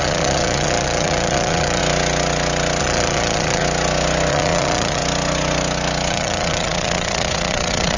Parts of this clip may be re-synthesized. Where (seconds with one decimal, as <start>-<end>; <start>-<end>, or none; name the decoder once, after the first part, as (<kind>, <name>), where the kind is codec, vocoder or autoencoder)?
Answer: 0.0-1.8 (vocoder, Vocos); 2.8-3.6; 4.3-5.0; 6.1-8.0